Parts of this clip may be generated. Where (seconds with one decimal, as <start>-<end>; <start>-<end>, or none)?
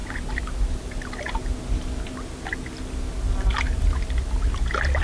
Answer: none